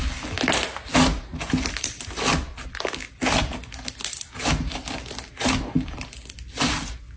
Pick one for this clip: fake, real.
real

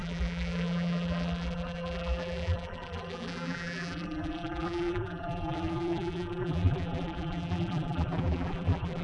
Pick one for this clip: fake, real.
fake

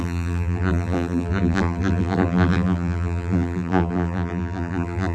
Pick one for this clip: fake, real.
fake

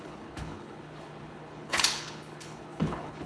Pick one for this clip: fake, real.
fake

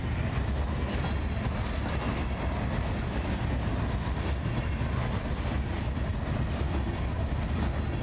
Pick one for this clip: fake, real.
real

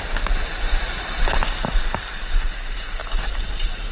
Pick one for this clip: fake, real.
fake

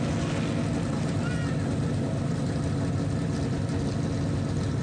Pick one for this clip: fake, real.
real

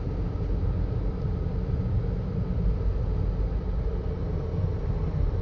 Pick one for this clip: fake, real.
real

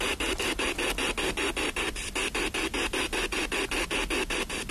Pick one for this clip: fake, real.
real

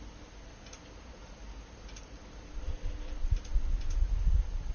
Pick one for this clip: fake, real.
real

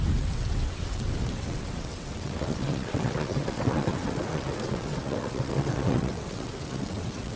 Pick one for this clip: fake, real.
fake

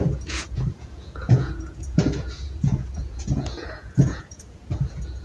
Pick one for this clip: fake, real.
fake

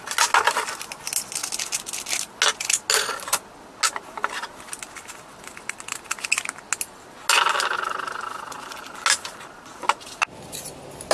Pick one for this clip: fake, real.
real